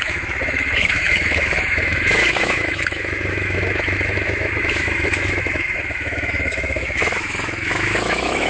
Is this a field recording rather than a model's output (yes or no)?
no